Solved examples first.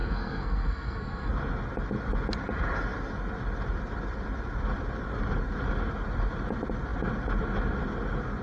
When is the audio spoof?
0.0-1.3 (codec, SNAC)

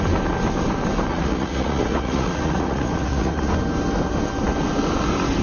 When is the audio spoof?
1.1-3.5 (vocoder, Vocos)

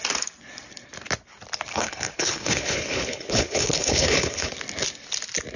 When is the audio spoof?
1.7-4.5 (codec, HILCodec)

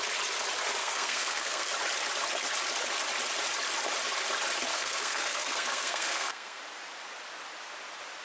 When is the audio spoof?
0.8-1.7 (codec, SNAC); 4.7-6.6

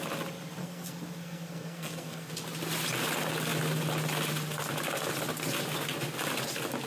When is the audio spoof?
0.6-2.3 (codec, SNAC)

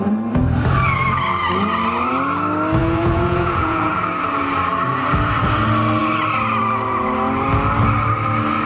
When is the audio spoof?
2.8-4.0 (vocoder, Vocos)

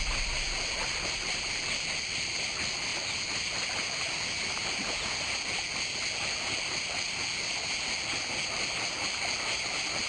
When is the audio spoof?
none

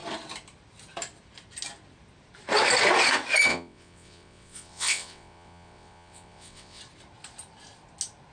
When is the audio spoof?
3.5-6.8 (vocoder, WaveNeXt)